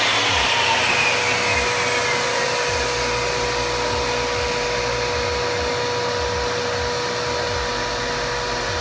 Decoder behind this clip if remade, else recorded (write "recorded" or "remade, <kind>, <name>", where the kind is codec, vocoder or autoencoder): recorded